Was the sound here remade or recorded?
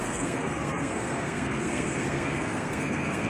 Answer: remade